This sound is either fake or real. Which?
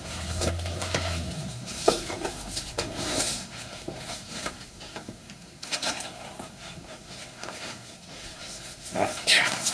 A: fake